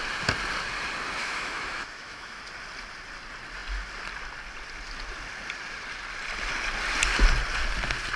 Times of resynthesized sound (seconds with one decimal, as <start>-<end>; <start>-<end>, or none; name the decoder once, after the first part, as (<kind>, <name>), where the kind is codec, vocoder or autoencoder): 1.2-2.4 (autoencoder, DAC-VAE)